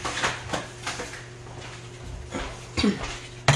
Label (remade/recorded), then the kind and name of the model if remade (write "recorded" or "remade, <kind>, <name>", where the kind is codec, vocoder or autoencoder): recorded